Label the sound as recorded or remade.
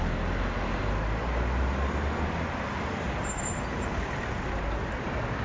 recorded